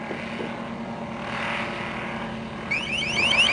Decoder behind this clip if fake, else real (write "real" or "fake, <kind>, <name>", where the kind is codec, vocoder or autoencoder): real